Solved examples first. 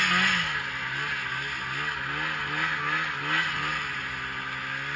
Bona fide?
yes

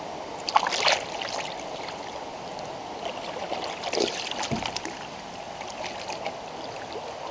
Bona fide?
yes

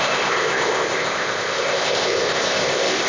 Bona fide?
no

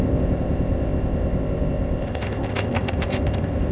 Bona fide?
no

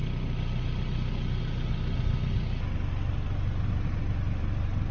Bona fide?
yes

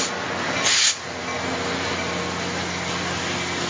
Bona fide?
yes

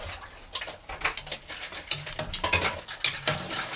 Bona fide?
yes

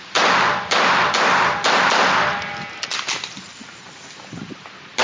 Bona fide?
yes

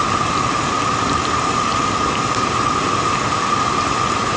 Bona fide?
yes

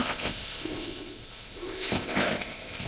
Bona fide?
no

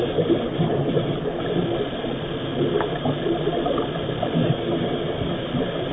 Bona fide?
yes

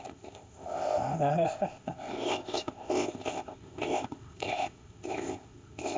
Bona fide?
no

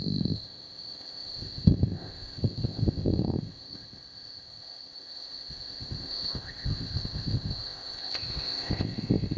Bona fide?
no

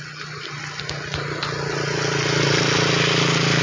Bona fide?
yes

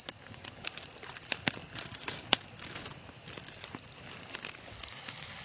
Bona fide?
yes